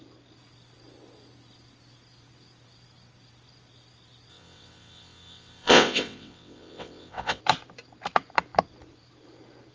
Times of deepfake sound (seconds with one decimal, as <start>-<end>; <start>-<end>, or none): 4.3-7.4